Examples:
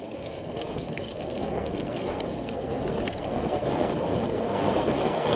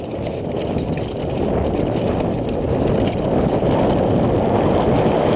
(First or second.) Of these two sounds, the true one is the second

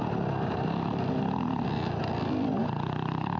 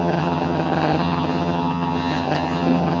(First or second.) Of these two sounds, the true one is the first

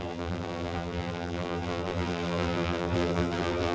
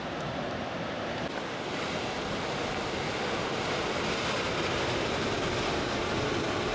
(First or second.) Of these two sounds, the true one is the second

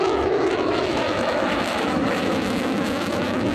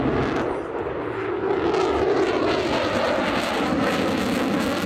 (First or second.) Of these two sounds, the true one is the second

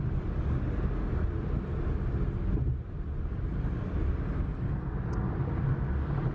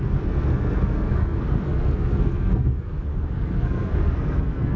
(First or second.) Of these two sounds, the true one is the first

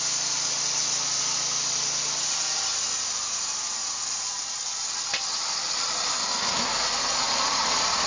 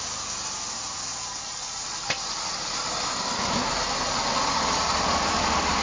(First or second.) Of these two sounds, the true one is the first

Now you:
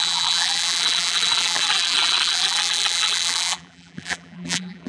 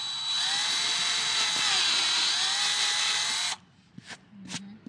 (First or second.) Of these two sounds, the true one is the second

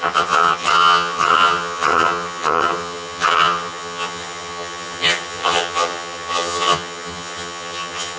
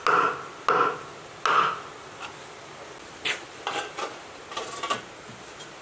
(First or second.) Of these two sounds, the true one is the second